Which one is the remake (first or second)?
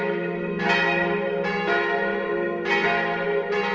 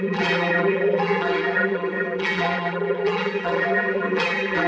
second